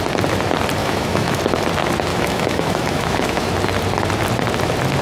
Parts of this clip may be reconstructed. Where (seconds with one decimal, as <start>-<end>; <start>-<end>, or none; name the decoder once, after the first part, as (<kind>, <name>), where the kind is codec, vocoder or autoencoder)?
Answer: 0.8-1.4 (autoencoder, DAC-VAE); 2.1-3.5

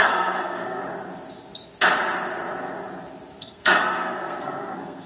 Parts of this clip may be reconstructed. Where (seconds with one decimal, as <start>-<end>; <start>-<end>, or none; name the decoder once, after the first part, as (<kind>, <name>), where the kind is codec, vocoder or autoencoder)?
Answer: 0.0-0.8 (codec, SNAC); 3.4-5.1

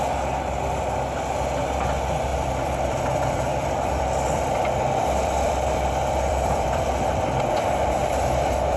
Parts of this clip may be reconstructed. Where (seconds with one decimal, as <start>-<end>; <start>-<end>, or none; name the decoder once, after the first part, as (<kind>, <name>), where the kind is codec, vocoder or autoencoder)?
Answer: 2.3-7.4 (vocoder, BigVGAN v2)

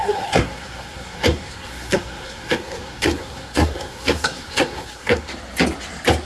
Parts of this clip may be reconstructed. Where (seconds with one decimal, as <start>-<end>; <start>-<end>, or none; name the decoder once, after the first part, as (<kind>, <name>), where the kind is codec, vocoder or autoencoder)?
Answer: 0.0-5.3 (codec, SNAC)

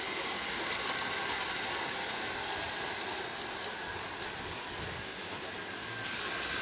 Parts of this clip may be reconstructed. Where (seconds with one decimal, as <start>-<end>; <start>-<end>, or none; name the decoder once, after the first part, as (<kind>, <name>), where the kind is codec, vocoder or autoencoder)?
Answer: 5.1-5.7 (vocoder, BigVGAN v2)

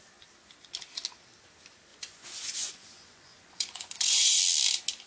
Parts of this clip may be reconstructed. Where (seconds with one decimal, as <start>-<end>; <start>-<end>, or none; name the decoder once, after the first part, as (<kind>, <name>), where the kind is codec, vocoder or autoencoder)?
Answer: 1.9-4.4 (vocoder, Vocos)